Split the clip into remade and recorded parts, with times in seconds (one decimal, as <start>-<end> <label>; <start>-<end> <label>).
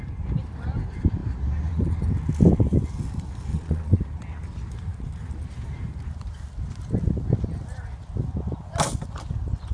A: 0.0-3.5 recorded; 3.5-4.0 remade; 4.0-9.7 recorded